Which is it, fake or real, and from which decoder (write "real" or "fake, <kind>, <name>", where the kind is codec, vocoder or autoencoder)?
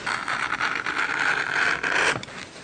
real